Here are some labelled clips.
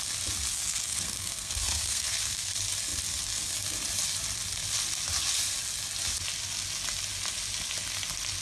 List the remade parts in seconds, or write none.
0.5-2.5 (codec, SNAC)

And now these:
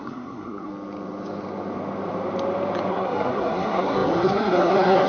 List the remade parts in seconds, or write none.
0.0-0.7 (codec, SNAC); 2.9-5.1

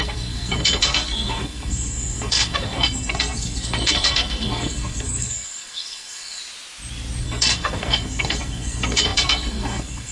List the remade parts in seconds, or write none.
0.0-6.4 (codec, SNAC); 7.2-10.1

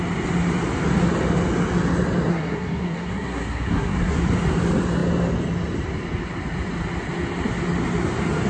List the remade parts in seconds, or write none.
2.3-4.2 (codec, SNAC)

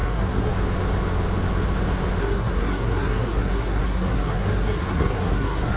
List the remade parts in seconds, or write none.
0.0-0.5 (codec, SNAC); 2.2-5.8

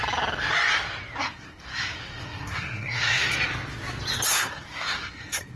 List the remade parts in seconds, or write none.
1.2-3.3 (codec, SNAC); 4.3-5.6

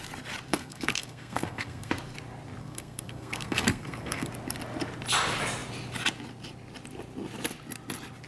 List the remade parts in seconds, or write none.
0.5-1.9 (codec, SNAC); 2.6-4.3